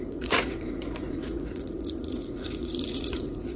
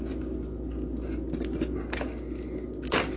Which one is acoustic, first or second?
second